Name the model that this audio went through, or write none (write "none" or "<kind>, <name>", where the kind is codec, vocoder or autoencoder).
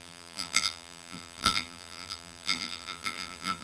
vocoder, BigVGAN v2